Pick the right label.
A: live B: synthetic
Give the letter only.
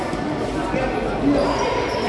A